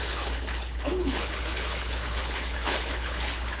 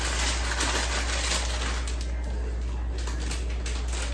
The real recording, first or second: second